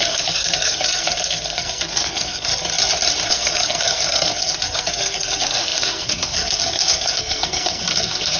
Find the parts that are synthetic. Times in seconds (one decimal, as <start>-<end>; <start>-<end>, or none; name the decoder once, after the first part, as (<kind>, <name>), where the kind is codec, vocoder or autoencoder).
0.0-2.5 (codec, SNAC); 3.3-8.4